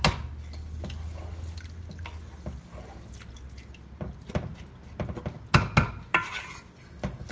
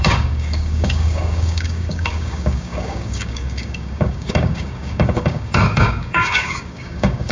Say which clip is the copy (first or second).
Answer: second